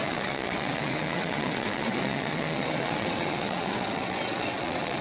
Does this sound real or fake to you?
fake